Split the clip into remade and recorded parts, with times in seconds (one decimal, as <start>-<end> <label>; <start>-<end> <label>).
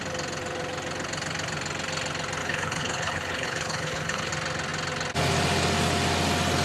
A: 0.0-2.4 recorded; 2.4-4.3 remade; 4.3-6.6 recorded